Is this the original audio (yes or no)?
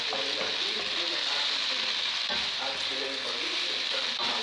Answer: yes